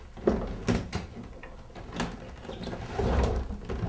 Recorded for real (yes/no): yes